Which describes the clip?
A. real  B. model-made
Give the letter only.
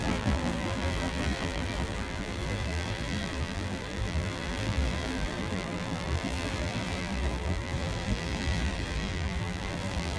B